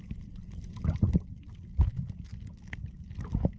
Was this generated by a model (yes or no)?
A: no